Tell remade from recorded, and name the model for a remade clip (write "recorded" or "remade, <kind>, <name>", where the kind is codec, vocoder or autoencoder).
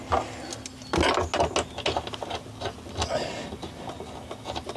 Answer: recorded